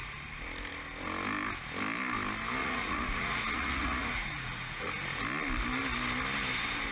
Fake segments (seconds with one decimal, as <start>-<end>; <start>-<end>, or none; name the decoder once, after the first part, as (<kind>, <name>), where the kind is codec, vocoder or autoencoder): 2.6-4.9 (vocoder, Vocos)